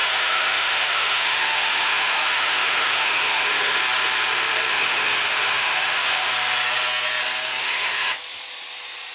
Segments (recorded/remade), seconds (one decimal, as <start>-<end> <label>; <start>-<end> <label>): 0.0-3.8 remade; 3.8-4.7 recorded; 4.7-6.3 remade; 6.3-7.6 recorded; 7.6-8.1 remade; 8.1-9.1 recorded